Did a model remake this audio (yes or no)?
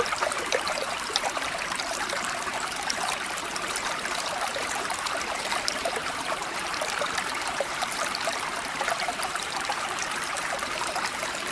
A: yes